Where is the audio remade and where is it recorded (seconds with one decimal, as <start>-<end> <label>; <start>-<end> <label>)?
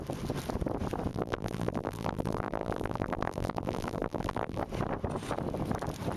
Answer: 0.0-1.1 recorded; 1.1-4.6 remade; 4.6-6.2 recorded